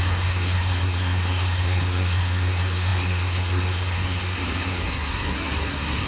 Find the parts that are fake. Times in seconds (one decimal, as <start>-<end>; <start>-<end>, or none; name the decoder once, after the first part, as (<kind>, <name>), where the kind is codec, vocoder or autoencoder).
0.0-6.1 (codec, SNAC)